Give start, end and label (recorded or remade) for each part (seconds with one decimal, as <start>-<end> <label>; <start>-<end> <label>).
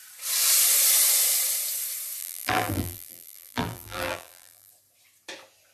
0.0-2.2 recorded; 2.2-4.7 remade; 4.7-5.7 recorded